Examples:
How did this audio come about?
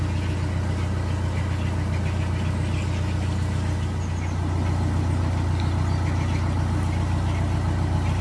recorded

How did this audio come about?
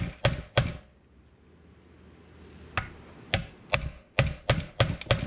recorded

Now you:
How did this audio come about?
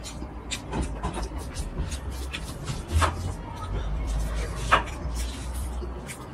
remade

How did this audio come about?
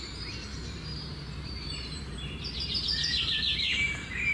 remade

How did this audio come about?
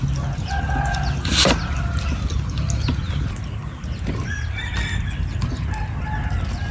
recorded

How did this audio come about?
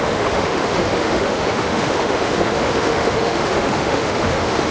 remade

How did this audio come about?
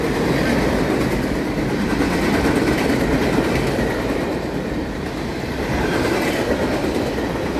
recorded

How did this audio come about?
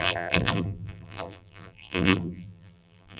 remade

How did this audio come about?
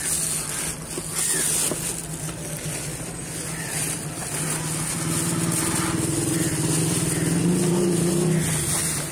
recorded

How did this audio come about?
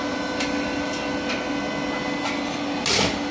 recorded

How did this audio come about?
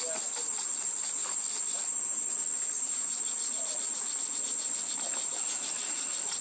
recorded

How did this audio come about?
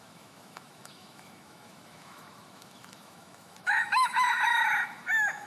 remade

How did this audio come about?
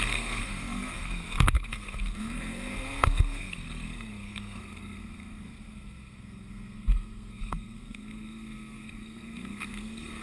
remade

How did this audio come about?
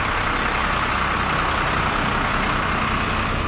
recorded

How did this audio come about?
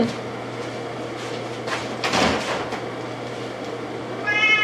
recorded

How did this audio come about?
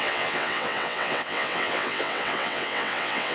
remade